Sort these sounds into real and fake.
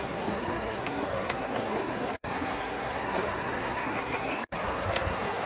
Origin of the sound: fake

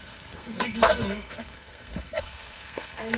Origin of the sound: fake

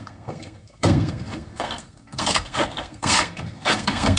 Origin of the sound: fake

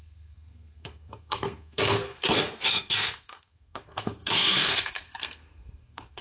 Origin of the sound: fake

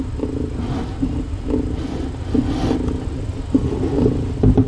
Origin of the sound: real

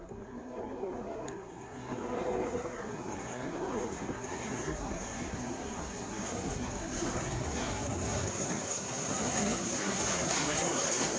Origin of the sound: fake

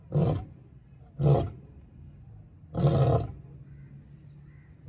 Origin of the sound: real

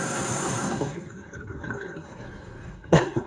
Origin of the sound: fake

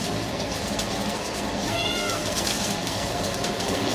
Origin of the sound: fake